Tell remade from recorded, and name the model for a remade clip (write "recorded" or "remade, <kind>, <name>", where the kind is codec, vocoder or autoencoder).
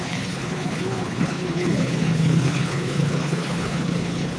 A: remade, codec, HILCodec